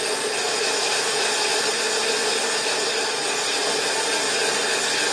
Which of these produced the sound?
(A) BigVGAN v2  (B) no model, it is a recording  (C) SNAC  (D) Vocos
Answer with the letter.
B